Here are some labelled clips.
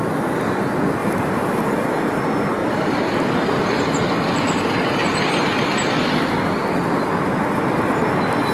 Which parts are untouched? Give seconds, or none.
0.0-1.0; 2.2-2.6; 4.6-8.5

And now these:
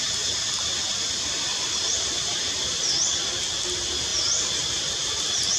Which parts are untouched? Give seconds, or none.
0.0-0.9; 2.4-5.6

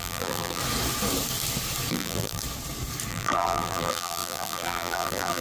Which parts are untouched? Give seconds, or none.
0.6-1.9; 2.4-3.1

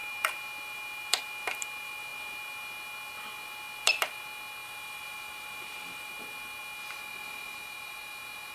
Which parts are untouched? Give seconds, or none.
0.0-4.6; 6.1-8.5

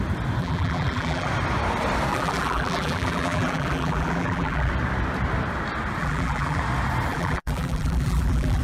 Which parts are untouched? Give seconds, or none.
0.0-0.4; 1.3-2.1; 4.7-6.0; 6.6-7.1

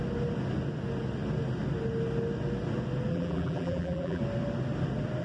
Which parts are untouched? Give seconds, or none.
0.0-3.1; 4.2-5.2